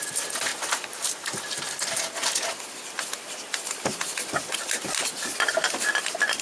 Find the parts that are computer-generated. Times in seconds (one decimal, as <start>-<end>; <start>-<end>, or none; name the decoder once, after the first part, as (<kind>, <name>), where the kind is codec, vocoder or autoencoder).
0.0-6.4 (vocoder, BigVGAN v2)